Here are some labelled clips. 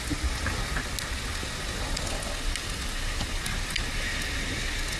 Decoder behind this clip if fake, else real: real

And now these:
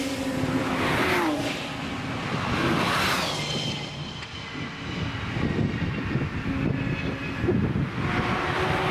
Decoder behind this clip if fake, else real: real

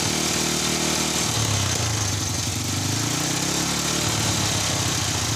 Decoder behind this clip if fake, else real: real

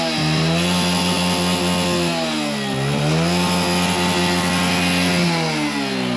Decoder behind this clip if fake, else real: real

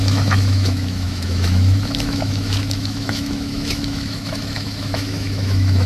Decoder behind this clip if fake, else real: fake, autoencoder, DAC-VAE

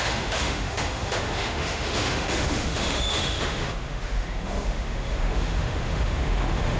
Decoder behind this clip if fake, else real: fake, autoencoder, DAC-VAE